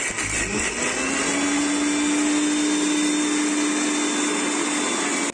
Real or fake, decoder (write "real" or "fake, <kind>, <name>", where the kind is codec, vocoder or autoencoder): real